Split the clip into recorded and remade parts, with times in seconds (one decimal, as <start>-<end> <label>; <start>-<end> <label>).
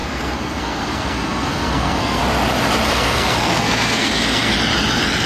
0.0-2.2 remade; 2.2-2.9 recorded; 2.9-4.5 remade; 4.5-5.3 recorded